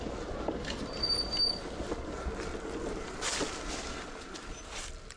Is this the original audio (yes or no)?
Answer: yes